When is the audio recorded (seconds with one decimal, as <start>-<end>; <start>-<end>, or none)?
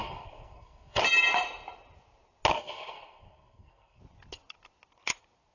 1.0-2.5; 4.0-5.5